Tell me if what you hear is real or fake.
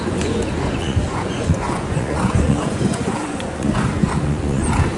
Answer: fake